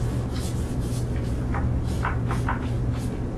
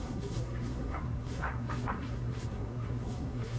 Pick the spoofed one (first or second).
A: second